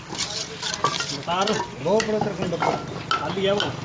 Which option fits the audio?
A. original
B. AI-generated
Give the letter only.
A